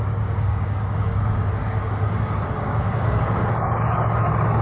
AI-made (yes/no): yes